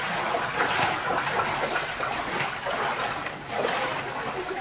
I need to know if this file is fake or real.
real